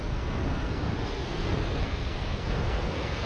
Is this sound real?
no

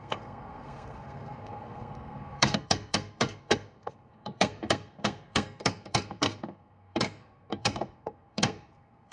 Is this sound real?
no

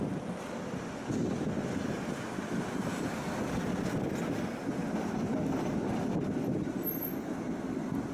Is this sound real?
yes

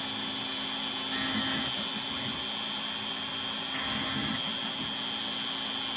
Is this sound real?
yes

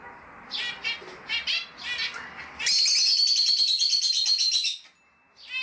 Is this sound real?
yes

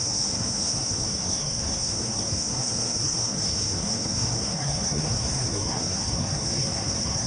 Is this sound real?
no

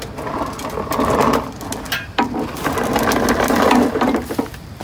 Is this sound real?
yes